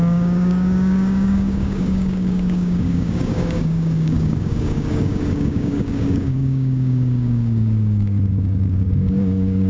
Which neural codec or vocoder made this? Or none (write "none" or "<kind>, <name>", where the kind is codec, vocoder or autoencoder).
codec, DAC